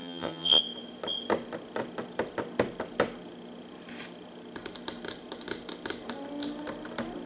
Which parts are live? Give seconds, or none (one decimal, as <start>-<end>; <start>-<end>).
0.6-7.3